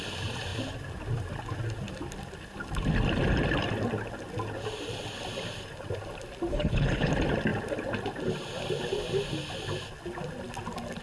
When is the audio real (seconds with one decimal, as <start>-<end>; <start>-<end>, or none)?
0.0-6.5; 7.1-11.0